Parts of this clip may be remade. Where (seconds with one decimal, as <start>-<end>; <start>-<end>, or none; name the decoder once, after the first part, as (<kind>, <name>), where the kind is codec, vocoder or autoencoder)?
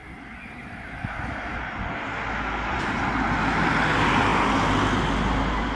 none